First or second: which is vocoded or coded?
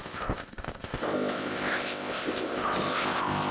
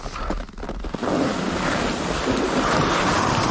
first